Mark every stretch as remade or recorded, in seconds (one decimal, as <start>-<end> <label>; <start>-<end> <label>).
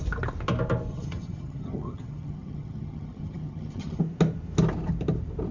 0.0-0.9 recorded; 0.9-4.0 remade; 4.0-5.5 recorded